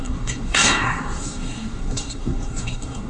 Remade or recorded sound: remade